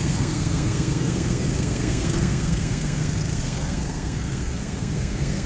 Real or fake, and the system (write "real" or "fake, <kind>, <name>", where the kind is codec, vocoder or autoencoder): fake, codec, SNAC